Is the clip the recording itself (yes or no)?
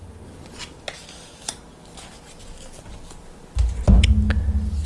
yes